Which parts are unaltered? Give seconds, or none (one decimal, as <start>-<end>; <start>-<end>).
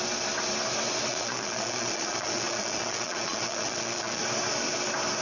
0.0-1.1; 4.2-5.2